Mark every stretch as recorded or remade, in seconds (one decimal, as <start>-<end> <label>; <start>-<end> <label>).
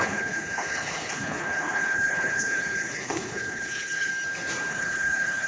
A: 0.0-4.1 remade; 4.1-4.7 recorded; 4.7-5.5 remade